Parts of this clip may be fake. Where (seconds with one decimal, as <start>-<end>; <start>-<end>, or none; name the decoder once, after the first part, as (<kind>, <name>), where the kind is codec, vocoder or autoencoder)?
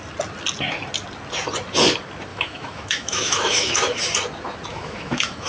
2.3-4.0 (autoencoder, DAC-VAE); 4.7-5.5